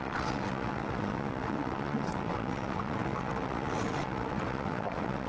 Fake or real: fake